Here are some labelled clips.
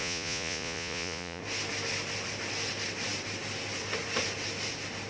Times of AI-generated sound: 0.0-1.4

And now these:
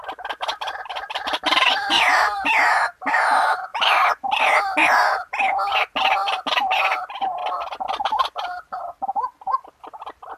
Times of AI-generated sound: 0.5-2.5; 3.7-4.4; 8.5-9.0

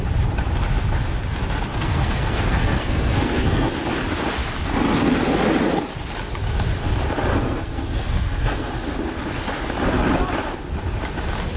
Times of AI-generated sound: 1.7-3.7; 7.3-8.7